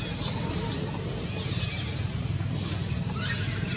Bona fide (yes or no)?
yes